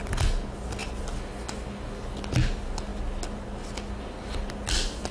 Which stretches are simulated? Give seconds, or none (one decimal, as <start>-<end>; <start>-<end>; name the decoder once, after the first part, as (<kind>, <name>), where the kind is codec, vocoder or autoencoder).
none